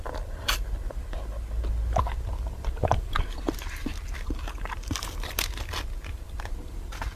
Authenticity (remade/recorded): recorded